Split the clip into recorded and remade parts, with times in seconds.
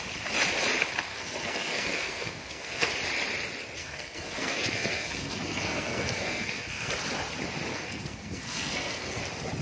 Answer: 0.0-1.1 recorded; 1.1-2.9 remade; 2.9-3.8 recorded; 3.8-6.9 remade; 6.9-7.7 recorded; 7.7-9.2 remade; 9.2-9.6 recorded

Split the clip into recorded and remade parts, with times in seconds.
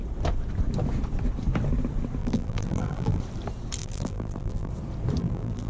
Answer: 0.0-2.2 recorded; 2.2-3.2 remade; 3.2-3.8 recorded; 3.8-4.7 remade; 4.7-5.2 recorded; 5.2-5.7 remade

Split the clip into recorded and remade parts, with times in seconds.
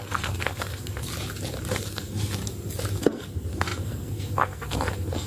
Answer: 0.0-1.1 remade; 1.1-1.7 recorded; 1.7-2.4 remade; 2.4-3.0 recorded; 3.0-5.3 remade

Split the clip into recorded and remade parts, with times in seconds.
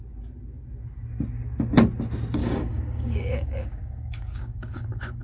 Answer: 0.0-2.4 recorded; 2.4-5.2 remade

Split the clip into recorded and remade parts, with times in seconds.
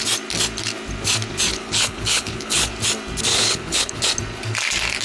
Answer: 0.0-1.5 recorded; 1.5-2.7 remade; 2.7-3.3 recorded; 3.3-4.0 remade; 4.0-5.0 recorded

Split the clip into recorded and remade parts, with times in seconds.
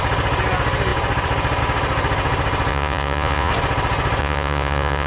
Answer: 0.0-2.7 recorded; 2.7-3.5 remade; 3.5-4.2 recorded; 4.2-5.1 remade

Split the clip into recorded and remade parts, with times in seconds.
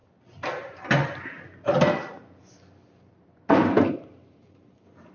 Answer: 0.0-3.1 recorded; 3.1-5.1 remade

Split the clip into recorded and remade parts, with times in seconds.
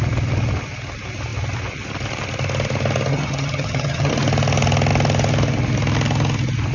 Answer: 0.0-3.1 recorded; 3.1-4.1 remade; 4.1-6.7 recorded